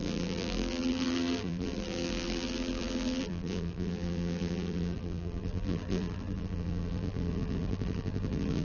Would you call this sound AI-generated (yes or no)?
yes